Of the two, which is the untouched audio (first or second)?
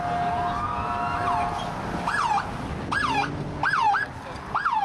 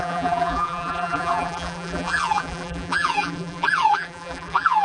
first